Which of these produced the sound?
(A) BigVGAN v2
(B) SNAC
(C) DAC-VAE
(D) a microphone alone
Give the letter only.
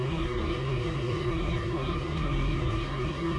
B